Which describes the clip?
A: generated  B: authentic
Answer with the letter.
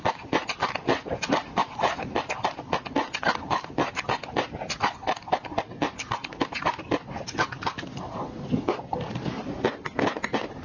B